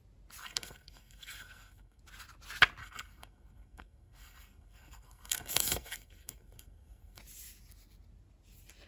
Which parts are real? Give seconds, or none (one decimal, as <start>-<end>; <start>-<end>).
0.0-0.4; 2.0-2.8; 7.2-8.9